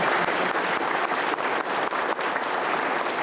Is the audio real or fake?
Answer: real